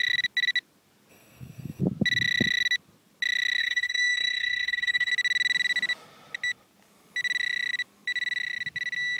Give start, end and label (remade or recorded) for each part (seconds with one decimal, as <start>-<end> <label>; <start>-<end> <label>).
0.0-1.1 recorded; 1.1-1.8 remade; 1.8-3.6 recorded; 3.6-5.1 remade; 5.1-9.2 recorded